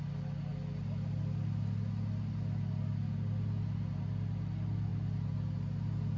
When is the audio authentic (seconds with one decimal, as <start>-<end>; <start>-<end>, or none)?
0.0-6.2